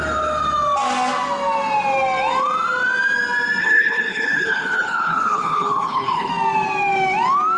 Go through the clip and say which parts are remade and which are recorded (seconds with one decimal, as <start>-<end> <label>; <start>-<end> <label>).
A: 0.0-3.6 recorded; 3.6-6.3 remade; 6.3-7.6 recorded